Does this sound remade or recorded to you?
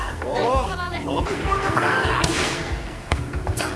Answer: remade